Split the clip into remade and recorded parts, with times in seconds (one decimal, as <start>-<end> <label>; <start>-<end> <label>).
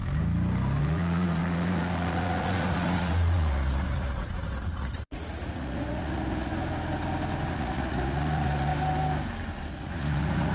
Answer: 0.0-0.8 recorded; 0.8-6.5 remade; 6.5-7.5 recorded; 7.5-8.7 remade; 8.7-9.7 recorded; 9.7-10.5 remade